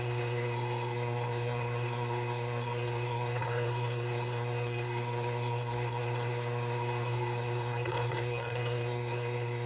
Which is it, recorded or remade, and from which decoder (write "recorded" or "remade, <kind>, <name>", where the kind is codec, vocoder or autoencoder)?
remade, codec, SNAC